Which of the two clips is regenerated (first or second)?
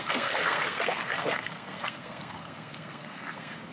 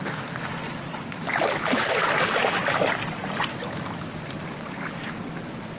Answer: first